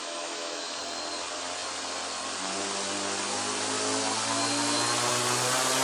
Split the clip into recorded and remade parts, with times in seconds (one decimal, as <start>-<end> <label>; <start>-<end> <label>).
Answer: 0.0-0.8 remade; 0.8-5.8 recorded